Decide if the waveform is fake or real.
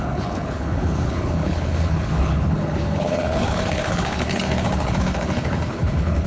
fake